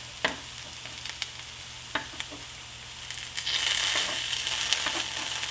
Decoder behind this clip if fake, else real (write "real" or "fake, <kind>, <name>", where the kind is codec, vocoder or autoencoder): real